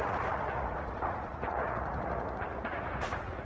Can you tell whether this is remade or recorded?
remade